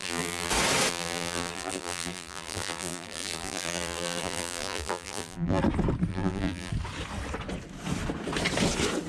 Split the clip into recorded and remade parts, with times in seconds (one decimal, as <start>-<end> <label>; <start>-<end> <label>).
0.0-0.5 remade; 0.5-0.9 recorded; 0.9-5.6 remade; 5.6-6.1 recorded; 6.1-6.7 remade; 6.7-9.1 recorded

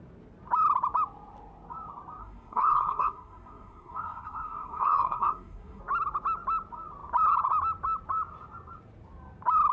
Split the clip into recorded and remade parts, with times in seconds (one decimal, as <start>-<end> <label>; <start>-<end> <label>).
0.0-2.2 recorded; 2.2-5.8 remade; 5.8-9.7 recorded

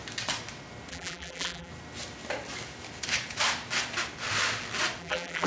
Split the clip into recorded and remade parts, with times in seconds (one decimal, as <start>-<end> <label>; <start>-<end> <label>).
0.0-0.9 recorded; 0.9-1.7 remade; 1.7-5.0 recorded; 5.0-5.5 remade

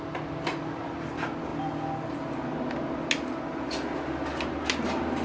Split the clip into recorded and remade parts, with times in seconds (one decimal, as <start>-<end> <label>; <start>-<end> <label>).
0.0-5.2 recorded